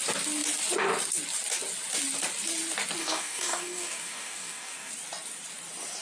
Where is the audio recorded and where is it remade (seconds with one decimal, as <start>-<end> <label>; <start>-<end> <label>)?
0.0-3.0 recorded; 3.0-4.9 remade; 4.9-6.0 recorded